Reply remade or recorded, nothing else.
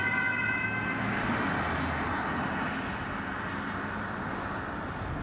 recorded